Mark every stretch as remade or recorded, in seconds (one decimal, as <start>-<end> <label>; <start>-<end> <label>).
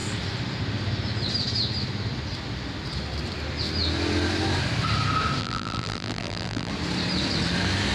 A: 0.0-5.4 recorded; 5.4-6.7 remade; 6.7-7.9 recorded